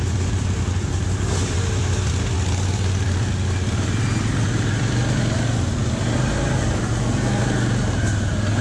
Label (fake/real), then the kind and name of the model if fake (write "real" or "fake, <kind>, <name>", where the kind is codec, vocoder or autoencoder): real